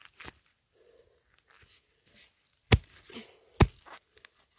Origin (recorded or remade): recorded